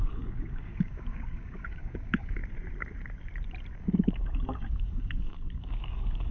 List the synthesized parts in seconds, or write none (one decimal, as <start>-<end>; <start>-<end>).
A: 0.0-2.4; 3.8-6.3